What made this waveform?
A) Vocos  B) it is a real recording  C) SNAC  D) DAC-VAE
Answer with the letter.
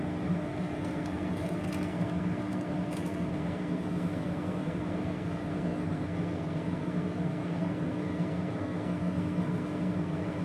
C